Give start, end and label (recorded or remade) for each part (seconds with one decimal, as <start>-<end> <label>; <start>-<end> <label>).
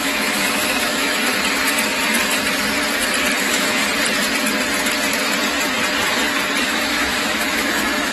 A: 0.0-1.3 remade; 1.3-3.4 recorded; 3.4-3.8 remade; 3.8-6.6 recorded; 6.6-8.1 remade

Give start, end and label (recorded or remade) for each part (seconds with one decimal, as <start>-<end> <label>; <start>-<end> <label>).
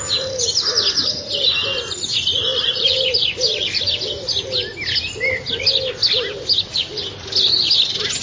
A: 0.0-2.5 recorded; 2.5-3.8 remade; 3.8-8.2 recorded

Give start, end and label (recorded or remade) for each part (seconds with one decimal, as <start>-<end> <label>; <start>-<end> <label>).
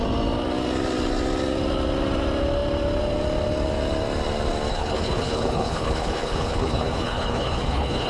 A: 0.0-4.7 recorded; 4.7-8.1 remade